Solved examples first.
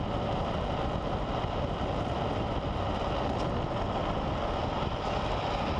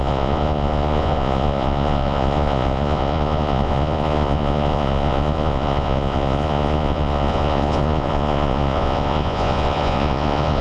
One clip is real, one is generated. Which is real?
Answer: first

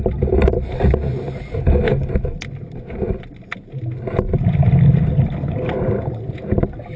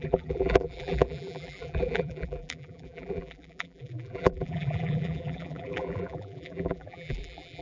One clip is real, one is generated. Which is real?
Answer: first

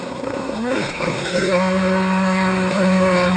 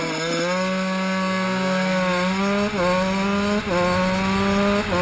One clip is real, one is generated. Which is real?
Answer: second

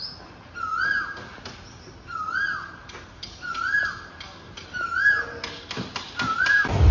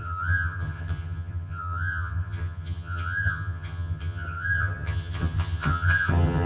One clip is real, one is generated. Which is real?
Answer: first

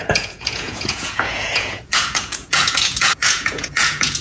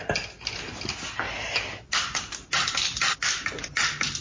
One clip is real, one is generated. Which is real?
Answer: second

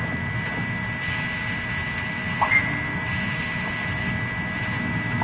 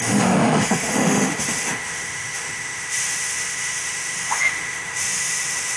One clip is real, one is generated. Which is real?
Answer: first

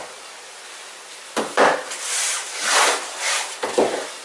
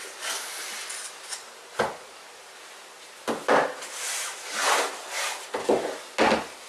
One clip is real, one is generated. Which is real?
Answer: second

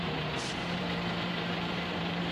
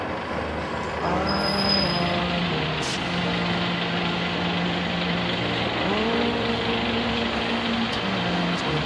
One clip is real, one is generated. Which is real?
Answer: second